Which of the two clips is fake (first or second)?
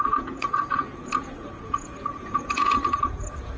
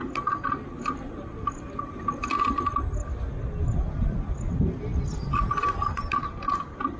first